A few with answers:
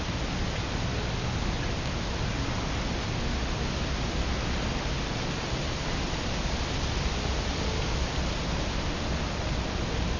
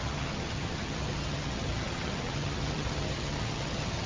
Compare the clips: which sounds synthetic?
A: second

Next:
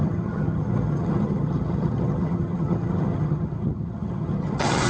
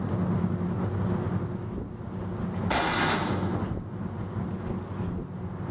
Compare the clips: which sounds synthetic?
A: first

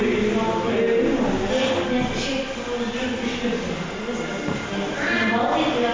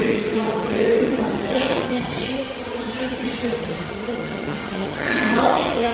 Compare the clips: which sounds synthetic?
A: second